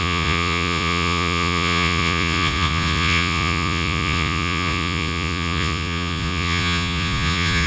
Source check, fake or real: fake